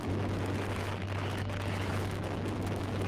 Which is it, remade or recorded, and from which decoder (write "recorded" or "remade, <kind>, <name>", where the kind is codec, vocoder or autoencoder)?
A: remade, autoencoder, DAC-VAE